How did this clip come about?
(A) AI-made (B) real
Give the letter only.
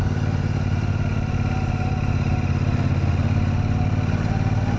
B